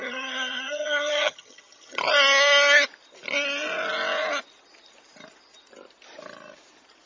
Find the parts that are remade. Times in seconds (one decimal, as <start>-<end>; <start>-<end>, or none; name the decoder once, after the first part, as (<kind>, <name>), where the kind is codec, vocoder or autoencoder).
0.0-2.0 (vocoder, HiFi-GAN)